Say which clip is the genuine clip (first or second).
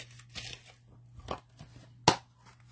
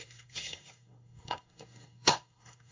first